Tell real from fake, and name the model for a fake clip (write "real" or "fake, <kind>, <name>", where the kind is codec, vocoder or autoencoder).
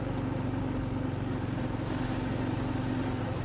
real